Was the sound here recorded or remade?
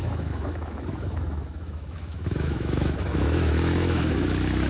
remade